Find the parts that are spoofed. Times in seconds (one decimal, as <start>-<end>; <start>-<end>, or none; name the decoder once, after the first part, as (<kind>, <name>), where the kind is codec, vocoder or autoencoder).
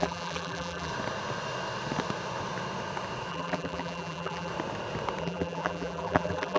0.0-0.9 (vocoder, BigVGAN v2); 3.3-4.5; 5.2-6.6